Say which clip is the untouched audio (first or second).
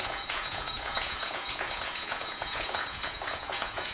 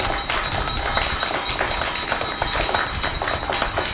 second